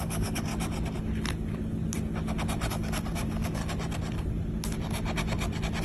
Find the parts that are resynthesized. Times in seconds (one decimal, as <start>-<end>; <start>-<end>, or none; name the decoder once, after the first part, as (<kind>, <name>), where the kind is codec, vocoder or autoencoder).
0.0-0.5 (codec, DAC); 2.7-3.6